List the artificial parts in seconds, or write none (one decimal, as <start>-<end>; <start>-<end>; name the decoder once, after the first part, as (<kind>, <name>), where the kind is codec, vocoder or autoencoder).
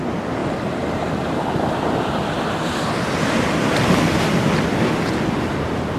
none